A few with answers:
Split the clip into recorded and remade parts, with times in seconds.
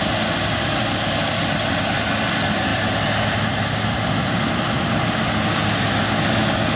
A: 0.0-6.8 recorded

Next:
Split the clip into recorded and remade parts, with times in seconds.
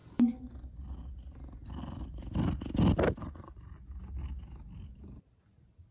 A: 0.0-5.9 recorded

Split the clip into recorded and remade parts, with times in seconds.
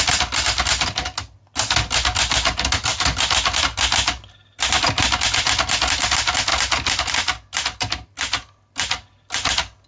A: 0.0-9.9 recorded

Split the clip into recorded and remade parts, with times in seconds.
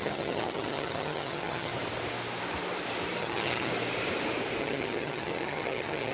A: 0.0-1.7 remade; 1.7-3.2 recorded; 3.2-3.7 remade; 3.7-4.6 recorded; 4.6-6.1 remade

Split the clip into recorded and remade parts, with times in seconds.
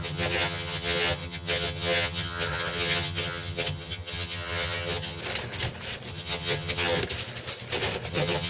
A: 0.0-5.2 remade; 5.2-6.1 recorded; 6.1-7.0 remade; 7.0-8.1 recorded; 8.1-8.5 remade